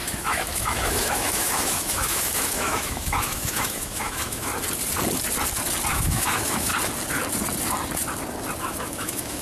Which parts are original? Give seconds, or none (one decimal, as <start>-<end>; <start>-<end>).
4.5-5.9; 6.7-8.6